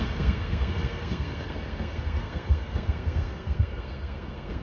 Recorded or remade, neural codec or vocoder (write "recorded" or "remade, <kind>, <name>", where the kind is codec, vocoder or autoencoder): remade, codec, SNAC